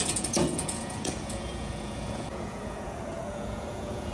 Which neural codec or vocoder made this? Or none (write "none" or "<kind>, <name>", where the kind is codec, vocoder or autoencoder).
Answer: vocoder, Vocos